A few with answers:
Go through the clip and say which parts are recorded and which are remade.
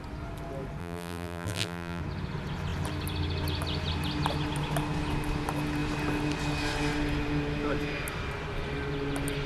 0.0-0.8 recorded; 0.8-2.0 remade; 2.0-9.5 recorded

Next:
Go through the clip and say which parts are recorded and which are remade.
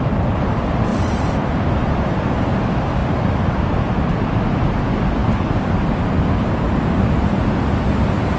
0.0-0.9 recorded; 0.9-2.4 remade; 2.4-3.0 recorded; 3.0-3.6 remade; 3.6-5.2 recorded; 5.2-7.4 remade; 7.4-8.4 recorded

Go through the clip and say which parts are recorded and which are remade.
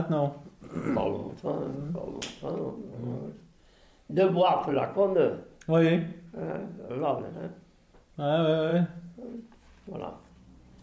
0.0-1.2 recorded; 1.2-1.9 remade; 1.9-2.9 recorded; 2.9-4.7 remade; 4.7-8.7 recorded; 8.7-9.4 remade; 9.4-10.8 recorded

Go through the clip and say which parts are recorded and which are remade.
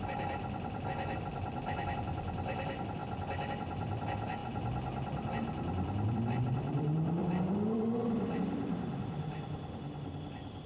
0.0-3.0 remade; 3.0-3.5 recorded; 3.5-4.4 remade; 4.4-6.1 recorded; 6.1-10.7 remade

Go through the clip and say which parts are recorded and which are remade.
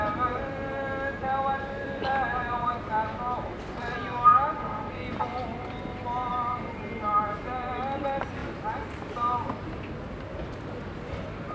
0.0-1.2 recorded; 1.2-4.3 remade; 4.3-5.5 recorded; 5.5-6.3 remade; 6.3-11.5 recorded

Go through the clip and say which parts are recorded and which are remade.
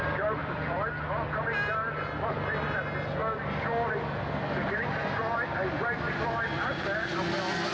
0.0-0.4 recorded; 0.4-1.0 remade; 1.0-7.7 recorded